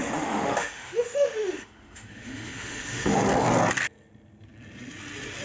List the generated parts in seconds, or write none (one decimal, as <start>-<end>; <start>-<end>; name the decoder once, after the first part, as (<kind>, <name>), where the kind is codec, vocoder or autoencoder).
0.0-3.2 (autoencoder, DAC-VAE)